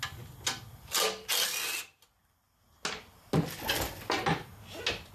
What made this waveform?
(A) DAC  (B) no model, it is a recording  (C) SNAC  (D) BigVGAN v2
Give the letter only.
B